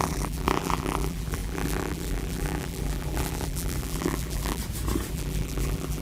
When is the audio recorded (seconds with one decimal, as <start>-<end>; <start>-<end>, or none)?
4.6-5.1